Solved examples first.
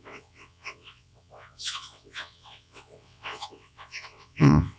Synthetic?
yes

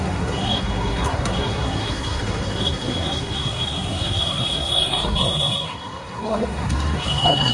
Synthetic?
yes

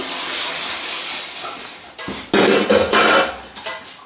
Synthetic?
no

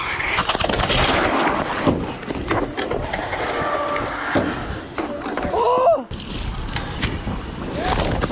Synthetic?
no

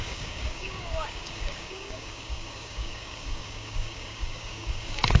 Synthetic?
yes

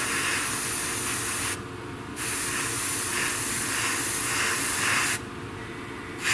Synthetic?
no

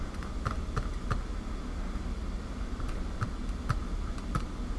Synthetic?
no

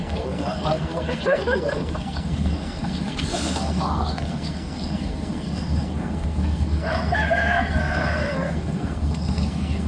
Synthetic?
yes